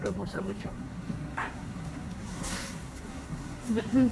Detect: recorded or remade remade